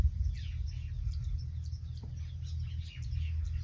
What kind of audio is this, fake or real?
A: real